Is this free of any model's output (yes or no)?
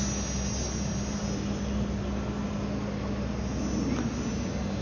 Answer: yes